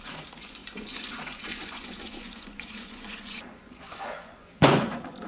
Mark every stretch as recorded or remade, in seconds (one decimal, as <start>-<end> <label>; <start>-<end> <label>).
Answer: 0.0-5.3 remade